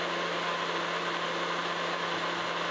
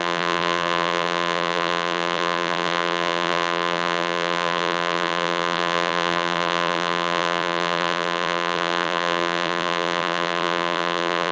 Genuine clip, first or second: first